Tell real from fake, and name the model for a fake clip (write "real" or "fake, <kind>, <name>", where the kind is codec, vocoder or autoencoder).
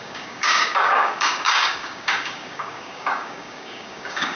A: fake, codec, DAC